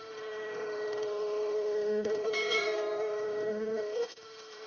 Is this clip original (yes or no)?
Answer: no